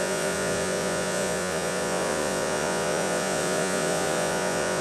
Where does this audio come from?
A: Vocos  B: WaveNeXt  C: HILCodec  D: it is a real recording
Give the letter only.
A